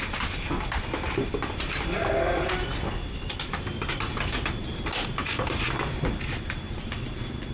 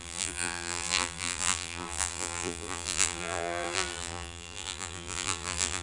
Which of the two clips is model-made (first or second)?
second